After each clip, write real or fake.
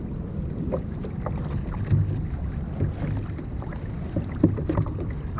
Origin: real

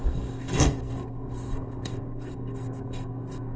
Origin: fake